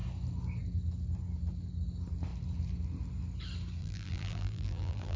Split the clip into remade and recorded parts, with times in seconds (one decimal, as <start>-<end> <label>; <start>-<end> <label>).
0.0-3.8 recorded; 3.8-5.2 remade